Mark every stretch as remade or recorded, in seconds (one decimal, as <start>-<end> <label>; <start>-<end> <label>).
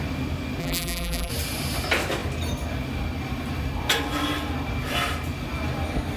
0.0-0.6 recorded; 0.6-1.3 remade; 1.3-6.2 recorded